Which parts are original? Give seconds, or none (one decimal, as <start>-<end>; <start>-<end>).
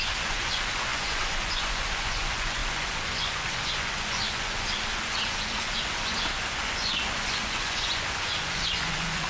none